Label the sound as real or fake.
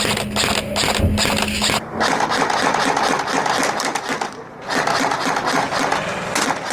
real